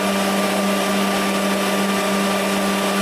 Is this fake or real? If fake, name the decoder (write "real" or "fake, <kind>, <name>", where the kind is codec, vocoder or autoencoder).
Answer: real